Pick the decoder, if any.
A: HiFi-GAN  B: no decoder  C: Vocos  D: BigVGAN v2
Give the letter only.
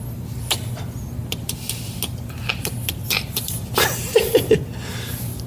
B